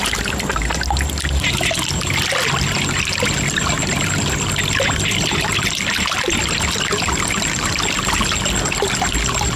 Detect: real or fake real